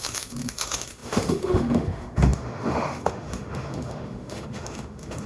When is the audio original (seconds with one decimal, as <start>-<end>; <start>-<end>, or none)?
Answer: none

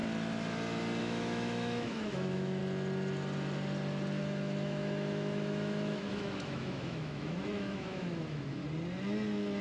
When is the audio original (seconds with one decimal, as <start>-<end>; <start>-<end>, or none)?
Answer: 0.0-1.0; 2.6-4.2; 8.6-9.6